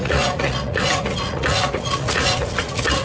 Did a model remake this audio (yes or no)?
yes